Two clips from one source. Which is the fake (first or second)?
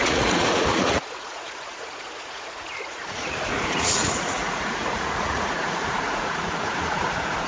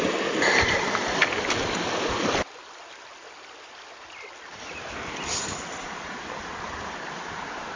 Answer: first